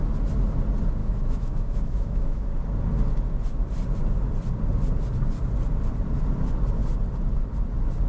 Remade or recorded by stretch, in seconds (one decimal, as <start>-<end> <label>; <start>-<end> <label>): 0.0-1.0 recorded; 1.0-2.5 remade; 2.5-8.1 recorded